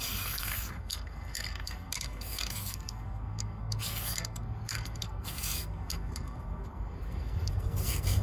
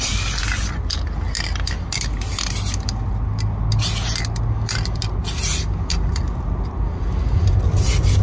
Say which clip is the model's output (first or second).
first